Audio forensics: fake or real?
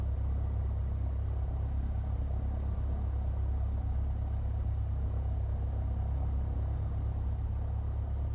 real